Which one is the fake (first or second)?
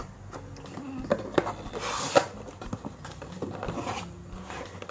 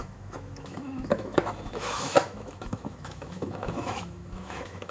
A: second